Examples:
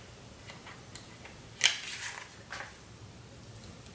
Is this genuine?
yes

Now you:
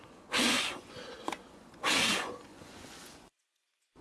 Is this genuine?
no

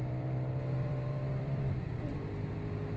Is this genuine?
no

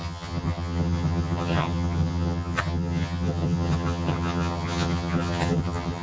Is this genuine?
no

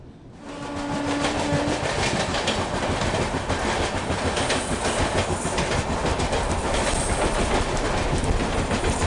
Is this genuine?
yes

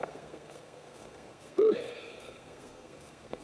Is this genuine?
no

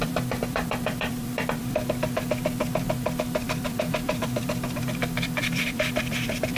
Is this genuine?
no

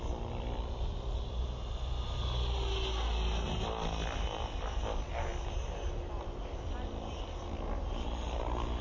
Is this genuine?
yes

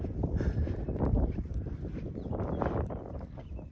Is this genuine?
no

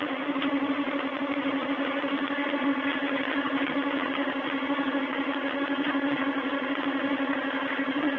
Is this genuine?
no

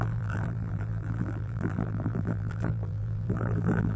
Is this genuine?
no